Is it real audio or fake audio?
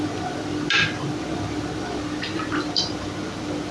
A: real